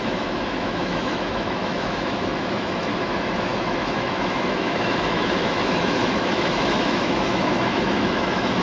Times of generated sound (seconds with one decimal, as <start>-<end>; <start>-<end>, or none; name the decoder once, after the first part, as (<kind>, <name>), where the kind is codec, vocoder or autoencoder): 0.0-8.6 (autoencoder, DAC-VAE)